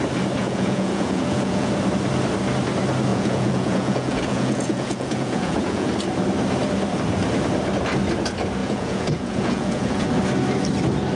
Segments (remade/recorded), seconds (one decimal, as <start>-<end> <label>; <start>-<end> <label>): 0.0-0.4 recorded; 0.4-1.7 remade; 1.7-3.1 recorded; 3.1-5.9 remade; 5.9-8.6 recorded; 8.6-10.1 remade; 10.1-11.2 recorded